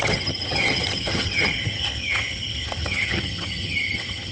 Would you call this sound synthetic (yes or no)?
yes